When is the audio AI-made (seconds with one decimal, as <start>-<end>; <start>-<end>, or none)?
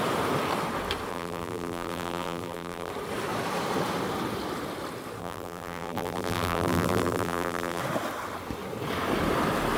1.1-2.9; 5.2-7.8